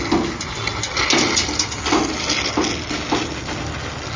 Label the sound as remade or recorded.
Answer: recorded